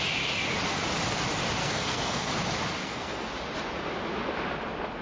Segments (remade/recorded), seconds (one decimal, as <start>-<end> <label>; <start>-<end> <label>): 0.0-1.6 recorded; 1.6-2.3 remade; 2.3-2.8 recorded; 2.8-3.3 remade; 3.3-5.0 recorded